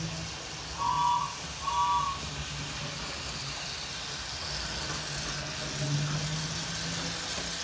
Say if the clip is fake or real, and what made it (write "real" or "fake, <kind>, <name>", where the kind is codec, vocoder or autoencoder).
real